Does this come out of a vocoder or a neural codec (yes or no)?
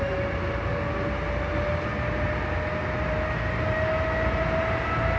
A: no